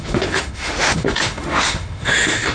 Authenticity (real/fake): fake